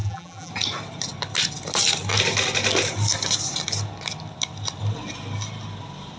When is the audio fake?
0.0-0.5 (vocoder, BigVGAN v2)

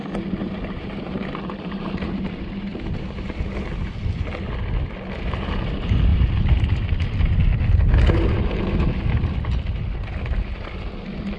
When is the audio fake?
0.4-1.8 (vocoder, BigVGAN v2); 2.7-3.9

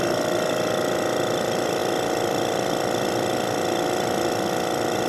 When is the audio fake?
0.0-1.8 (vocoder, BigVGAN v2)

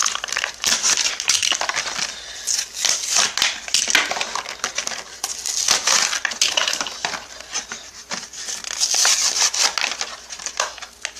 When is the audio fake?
0.0-1.1 (vocoder, BigVGAN v2); 7.5-8.2; 9.0-9.6

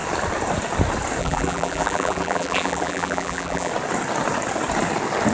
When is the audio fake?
1.2-3.7 (vocoder, BigVGAN v2)

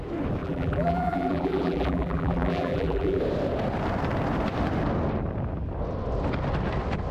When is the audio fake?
0.4-3.2 (vocoder, BigVGAN v2)

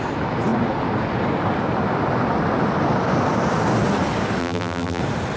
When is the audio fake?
4.4-5.0 (vocoder, BigVGAN v2)

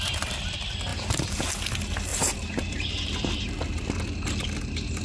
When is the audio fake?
0.9-1.4 (vocoder, BigVGAN v2); 2.1-3.7